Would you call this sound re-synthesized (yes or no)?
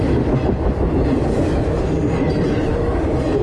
no